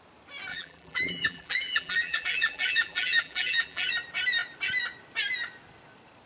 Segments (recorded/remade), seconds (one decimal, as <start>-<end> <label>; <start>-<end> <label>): 0.0-0.5 recorded; 0.5-3.9 remade; 3.9-6.3 recorded